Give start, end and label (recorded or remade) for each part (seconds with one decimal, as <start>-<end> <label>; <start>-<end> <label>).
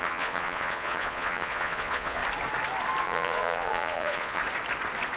0.0-2.2 remade; 2.2-3.0 recorded; 3.0-4.4 remade; 4.4-5.2 recorded